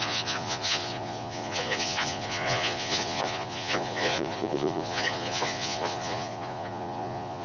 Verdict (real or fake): fake